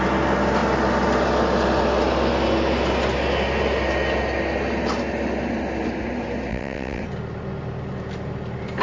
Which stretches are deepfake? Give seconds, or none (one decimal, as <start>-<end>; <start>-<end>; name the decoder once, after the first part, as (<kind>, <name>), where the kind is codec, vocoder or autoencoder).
6.5-7.0 (vocoder, WaveNeXt)